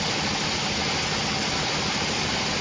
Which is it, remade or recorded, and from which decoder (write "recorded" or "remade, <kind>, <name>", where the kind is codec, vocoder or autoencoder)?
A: recorded